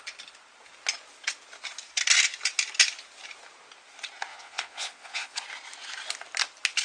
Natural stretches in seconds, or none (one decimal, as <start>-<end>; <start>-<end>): 0.0-4.3; 5.4-6.8